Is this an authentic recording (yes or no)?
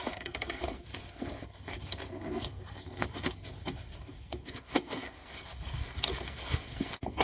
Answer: no